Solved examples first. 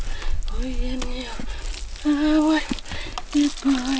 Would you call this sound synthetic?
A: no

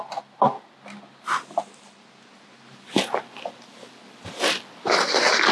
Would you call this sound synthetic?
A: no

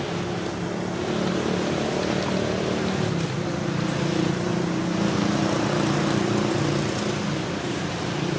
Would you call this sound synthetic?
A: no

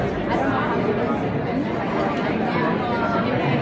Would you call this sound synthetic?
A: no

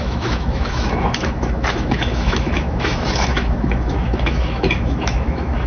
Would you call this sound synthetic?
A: yes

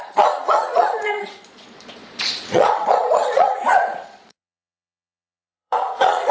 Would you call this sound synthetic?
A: yes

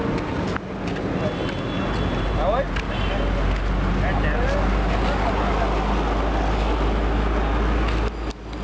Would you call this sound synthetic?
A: no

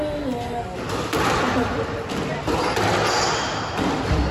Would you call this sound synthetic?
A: no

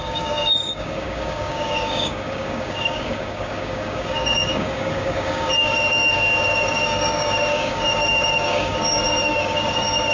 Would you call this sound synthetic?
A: yes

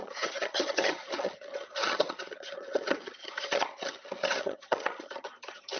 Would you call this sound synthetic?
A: yes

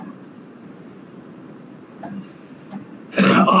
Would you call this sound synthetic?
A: yes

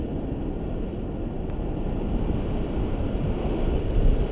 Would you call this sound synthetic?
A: no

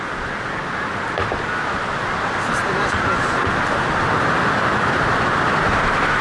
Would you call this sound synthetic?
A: no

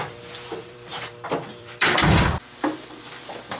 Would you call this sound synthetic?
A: yes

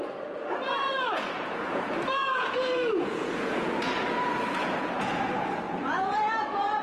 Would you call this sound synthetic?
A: yes